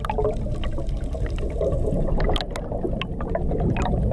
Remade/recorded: recorded